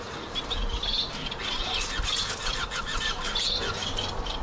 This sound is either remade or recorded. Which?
recorded